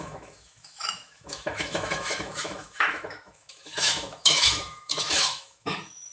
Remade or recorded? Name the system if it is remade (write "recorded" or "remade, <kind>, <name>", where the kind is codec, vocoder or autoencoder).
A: remade, autoencoder, DAC-VAE